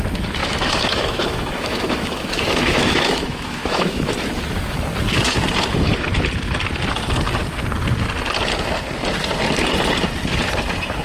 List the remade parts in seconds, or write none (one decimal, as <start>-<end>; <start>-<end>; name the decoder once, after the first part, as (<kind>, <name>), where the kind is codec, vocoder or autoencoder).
0.4-4.1 (autoencoder, DAC-VAE)